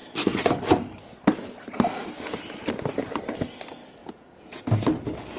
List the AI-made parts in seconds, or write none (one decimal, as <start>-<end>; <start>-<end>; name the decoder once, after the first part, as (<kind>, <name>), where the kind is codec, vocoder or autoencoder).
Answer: 4.0-4.6 (vocoder, Vocos)